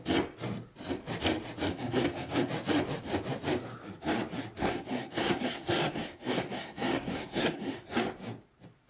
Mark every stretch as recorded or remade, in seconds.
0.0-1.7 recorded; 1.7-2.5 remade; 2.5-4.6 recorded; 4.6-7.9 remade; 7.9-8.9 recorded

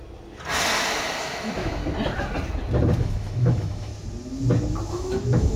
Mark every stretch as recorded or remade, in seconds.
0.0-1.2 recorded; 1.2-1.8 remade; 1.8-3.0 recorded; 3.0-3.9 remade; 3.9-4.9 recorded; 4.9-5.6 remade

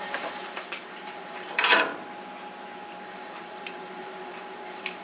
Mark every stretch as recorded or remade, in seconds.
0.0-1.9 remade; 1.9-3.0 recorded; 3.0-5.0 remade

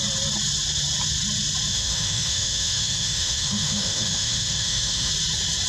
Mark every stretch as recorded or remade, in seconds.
0.0-1.7 recorded; 1.7-5.1 remade; 5.1-5.7 recorded